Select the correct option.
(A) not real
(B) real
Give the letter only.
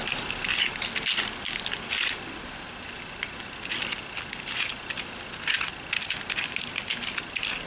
B